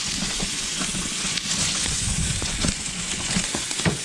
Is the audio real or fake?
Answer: fake